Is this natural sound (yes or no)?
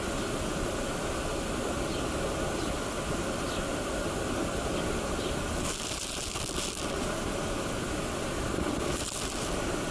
yes